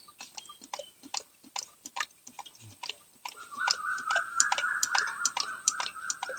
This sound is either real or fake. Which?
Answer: fake